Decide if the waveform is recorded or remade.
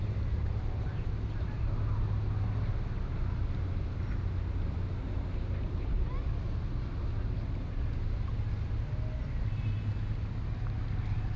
recorded